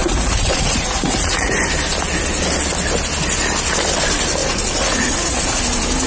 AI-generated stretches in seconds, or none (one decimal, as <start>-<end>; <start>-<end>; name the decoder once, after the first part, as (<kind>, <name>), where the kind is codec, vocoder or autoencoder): 0.0-1.5 (vocoder, Vocos); 4.4-5.6